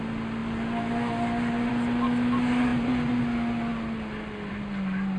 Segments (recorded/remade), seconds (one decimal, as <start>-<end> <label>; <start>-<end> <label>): 0.0-5.2 recorded